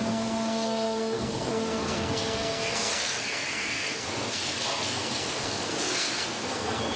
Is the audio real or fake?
fake